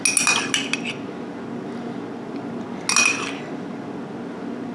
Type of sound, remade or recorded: recorded